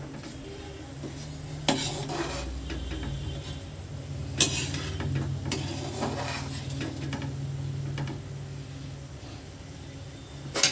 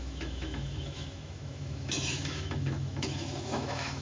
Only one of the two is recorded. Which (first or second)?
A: first